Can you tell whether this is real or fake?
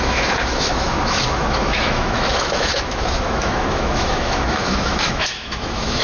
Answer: fake